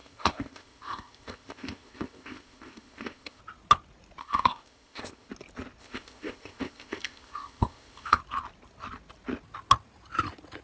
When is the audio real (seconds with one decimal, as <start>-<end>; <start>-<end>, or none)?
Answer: 3.4-4.2; 5.3-5.8; 8.2-10.6